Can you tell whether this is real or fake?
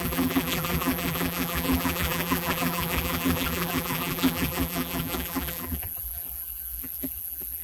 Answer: fake